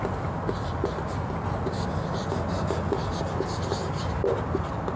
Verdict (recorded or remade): recorded